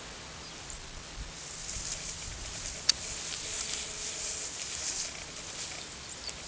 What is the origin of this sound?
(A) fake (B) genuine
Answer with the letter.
B